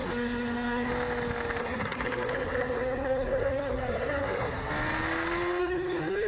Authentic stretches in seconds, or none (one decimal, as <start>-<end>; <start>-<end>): 0.9-1.6; 4.7-5.6